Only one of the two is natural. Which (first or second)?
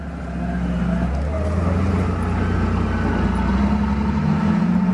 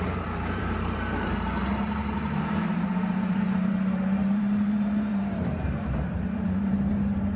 first